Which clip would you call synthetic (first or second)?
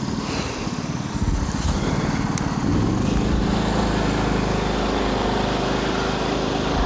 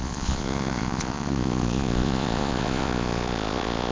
second